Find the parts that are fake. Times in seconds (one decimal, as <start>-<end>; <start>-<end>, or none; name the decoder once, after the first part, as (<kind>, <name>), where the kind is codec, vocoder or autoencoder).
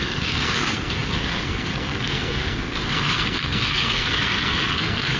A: 0.0-5.2 (codec, SNAC)